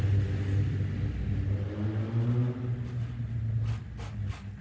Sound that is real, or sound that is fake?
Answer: real